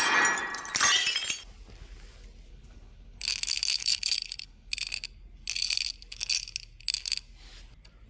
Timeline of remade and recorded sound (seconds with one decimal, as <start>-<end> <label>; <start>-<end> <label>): 0.0-2.5 recorded; 2.5-3.2 remade; 3.2-3.8 recorded; 3.8-4.7 remade; 4.7-8.1 recorded